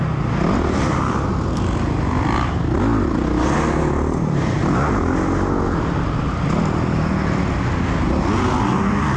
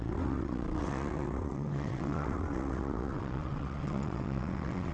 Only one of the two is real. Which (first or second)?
first